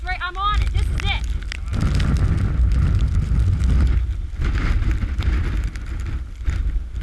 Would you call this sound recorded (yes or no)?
yes